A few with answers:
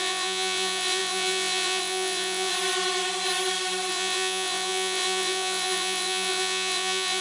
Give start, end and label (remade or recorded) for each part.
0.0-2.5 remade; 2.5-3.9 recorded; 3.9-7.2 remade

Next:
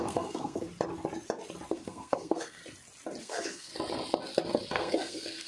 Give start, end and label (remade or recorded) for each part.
0.0-0.7 remade; 0.7-1.7 recorded; 1.7-2.6 remade; 2.6-3.2 recorded; 3.2-3.7 remade; 3.7-4.7 recorded; 4.7-5.5 remade

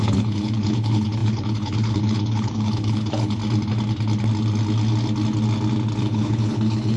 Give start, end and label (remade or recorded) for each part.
0.0-3.4 remade; 3.4-6.0 recorded; 6.0-7.0 remade

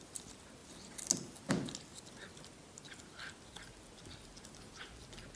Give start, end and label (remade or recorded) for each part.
0.0-5.4 recorded

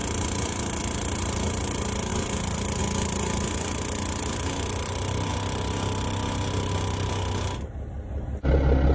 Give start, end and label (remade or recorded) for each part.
0.0-8.9 recorded